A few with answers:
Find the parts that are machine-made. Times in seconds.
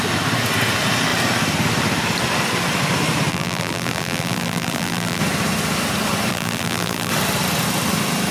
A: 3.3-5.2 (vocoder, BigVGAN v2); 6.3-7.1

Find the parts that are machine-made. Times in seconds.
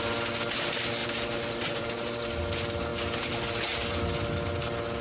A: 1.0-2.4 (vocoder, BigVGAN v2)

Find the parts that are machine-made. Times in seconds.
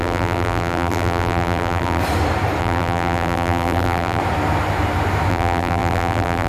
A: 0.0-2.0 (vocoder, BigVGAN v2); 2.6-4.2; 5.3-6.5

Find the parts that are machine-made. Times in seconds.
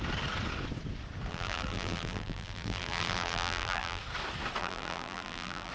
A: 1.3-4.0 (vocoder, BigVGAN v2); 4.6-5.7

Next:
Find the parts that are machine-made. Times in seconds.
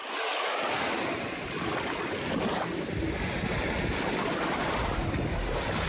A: none